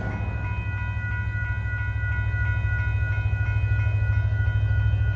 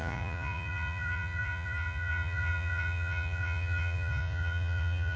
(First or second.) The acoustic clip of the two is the first